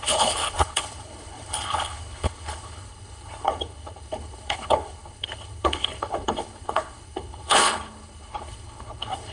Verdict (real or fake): fake